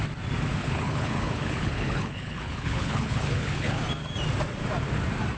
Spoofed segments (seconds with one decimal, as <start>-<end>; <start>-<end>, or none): 0.6-3.8